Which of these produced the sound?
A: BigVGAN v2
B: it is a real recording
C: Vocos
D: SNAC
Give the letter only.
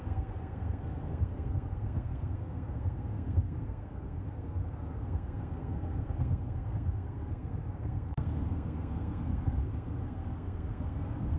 D